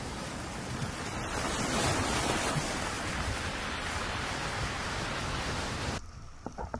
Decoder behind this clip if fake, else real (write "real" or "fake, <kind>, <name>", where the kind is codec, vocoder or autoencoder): real